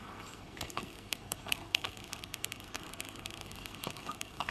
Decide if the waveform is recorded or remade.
remade